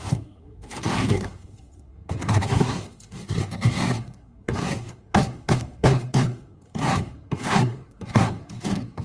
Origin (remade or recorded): remade